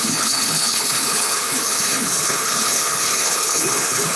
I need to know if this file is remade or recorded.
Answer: remade